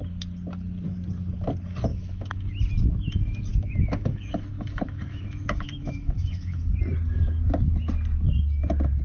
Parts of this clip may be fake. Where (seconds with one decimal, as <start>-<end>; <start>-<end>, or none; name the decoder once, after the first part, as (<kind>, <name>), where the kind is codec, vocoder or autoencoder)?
1.9-2.5 (autoencoder, DAC-VAE); 3.5-6.7